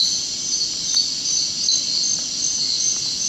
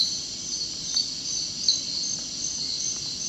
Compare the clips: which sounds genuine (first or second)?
first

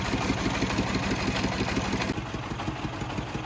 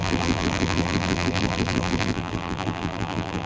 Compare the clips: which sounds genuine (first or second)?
first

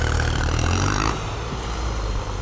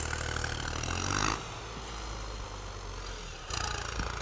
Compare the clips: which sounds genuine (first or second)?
second